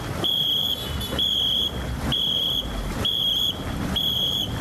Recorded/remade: remade